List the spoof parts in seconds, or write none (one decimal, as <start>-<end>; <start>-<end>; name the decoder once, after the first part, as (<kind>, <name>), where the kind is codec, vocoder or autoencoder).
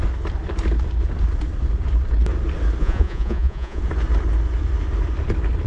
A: 2.8-3.8 (vocoder, Vocos)